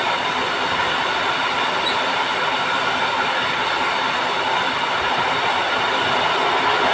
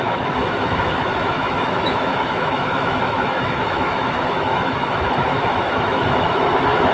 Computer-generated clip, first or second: second